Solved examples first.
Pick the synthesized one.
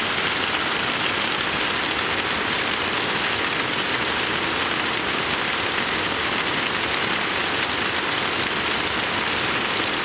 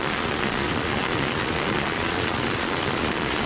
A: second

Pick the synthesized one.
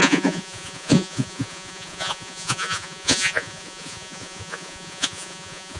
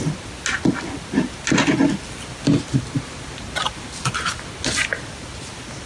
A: first